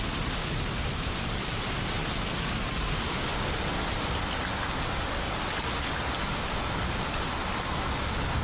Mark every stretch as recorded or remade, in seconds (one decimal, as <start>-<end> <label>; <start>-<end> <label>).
0.0-8.4 recorded